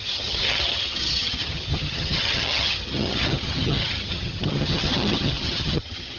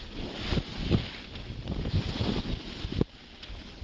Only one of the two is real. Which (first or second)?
second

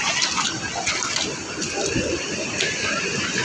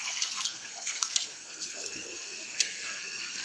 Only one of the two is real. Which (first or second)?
first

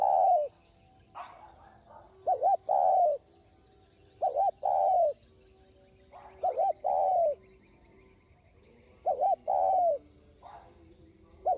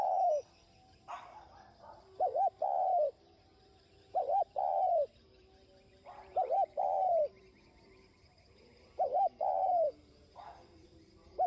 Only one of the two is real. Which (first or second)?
first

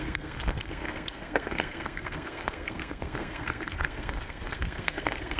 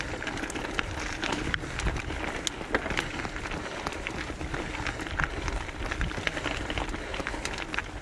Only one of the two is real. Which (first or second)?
second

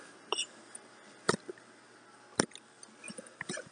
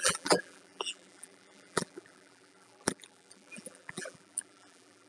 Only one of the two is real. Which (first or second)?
first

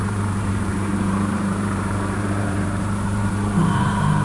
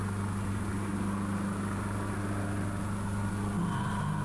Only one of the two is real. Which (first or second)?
second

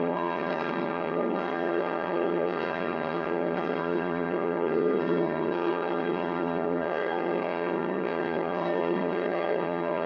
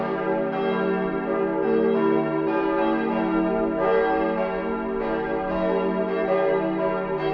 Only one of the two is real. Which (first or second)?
second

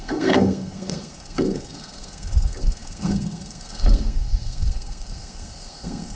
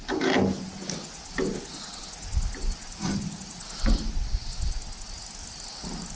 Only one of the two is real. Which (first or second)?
second